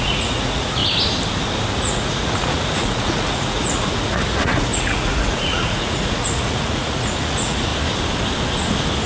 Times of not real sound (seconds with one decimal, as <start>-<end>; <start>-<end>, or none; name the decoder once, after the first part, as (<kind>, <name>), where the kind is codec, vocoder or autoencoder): 0.0-0.8 (vocoder, Vocos); 1.8-7.7